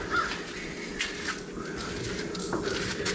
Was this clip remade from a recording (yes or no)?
no